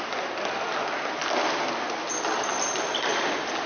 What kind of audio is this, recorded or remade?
recorded